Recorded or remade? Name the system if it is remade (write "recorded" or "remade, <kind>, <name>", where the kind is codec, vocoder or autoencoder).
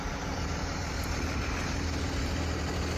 remade, vocoder, BigVGAN v2